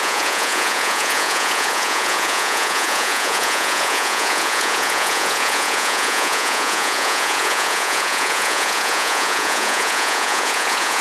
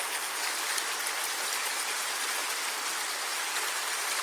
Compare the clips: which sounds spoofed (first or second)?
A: first